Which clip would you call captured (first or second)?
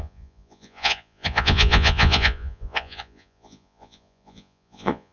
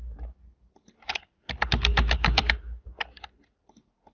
second